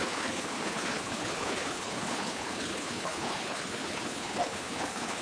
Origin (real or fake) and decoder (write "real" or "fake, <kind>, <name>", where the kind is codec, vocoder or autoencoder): fake, codec, HILCodec